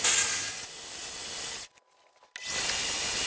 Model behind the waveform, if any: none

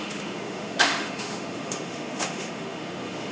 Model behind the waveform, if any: autoencoder, DAC-VAE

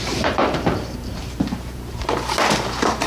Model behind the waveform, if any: vocoder, BigVGAN v2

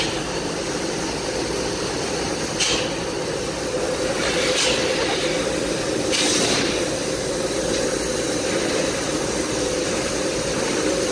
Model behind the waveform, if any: none